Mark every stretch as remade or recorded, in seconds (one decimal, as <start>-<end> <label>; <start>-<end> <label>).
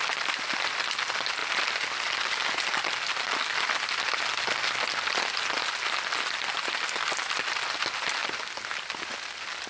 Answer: 0.0-9.7 recorded